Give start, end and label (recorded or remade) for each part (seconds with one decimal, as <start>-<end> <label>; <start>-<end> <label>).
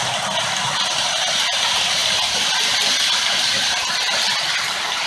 0.0-5.1 recorded